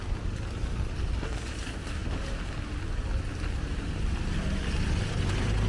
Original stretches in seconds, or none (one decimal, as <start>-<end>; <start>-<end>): 0.0-5.7